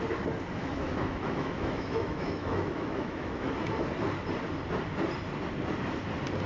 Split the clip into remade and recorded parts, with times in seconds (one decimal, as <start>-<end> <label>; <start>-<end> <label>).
0.0-0.6 recorded; 0.6-3.5 remade; 3.5-6.5 recorded